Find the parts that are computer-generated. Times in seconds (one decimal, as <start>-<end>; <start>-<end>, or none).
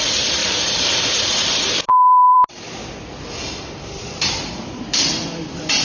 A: 0.0-2.8; 3.7-5.8